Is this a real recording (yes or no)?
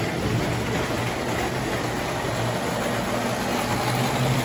yes